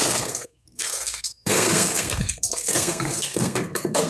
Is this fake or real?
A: fake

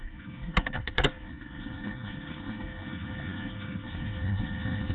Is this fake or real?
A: fake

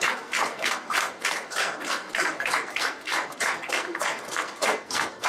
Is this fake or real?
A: fake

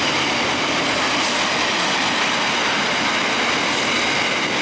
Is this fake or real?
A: real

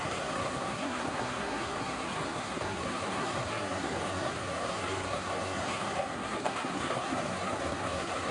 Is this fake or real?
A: fake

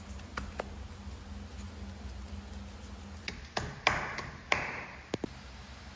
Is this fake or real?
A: real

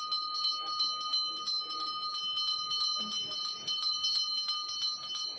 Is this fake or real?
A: real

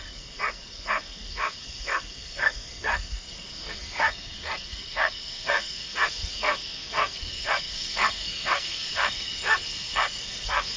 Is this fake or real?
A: fake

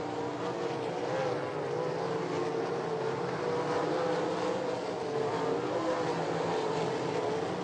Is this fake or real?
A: real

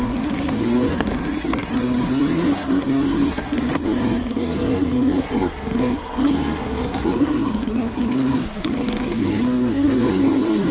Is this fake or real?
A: fake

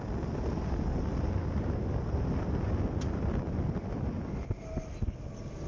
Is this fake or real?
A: real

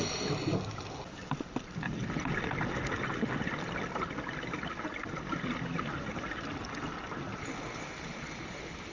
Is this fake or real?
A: real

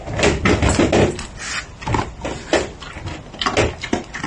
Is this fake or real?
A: real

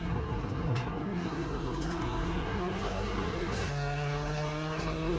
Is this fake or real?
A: fake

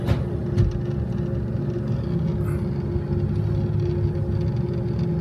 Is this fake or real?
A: real